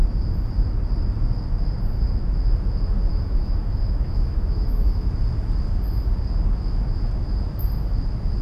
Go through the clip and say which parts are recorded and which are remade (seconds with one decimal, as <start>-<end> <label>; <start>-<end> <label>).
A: 0.0-3.1 recorded; 3.1-5.1 remade; 5.1-8.4 recorded